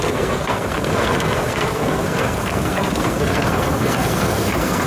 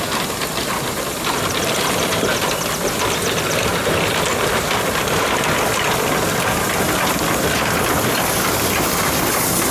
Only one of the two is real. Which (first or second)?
second